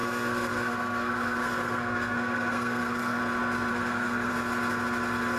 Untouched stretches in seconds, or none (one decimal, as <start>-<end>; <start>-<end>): 3.2-3.7; 4.3-5.4